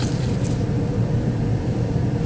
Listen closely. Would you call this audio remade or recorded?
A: remade